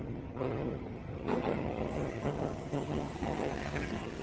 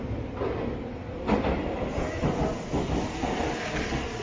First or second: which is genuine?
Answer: second